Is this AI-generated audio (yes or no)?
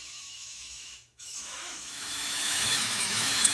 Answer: yes